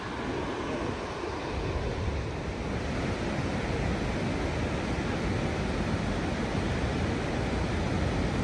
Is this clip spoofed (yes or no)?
no